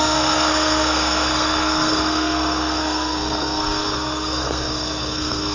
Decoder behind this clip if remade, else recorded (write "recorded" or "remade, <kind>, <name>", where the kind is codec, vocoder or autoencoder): remade, codec, SNAC